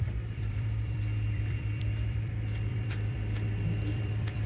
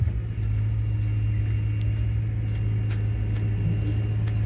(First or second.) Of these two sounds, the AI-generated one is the first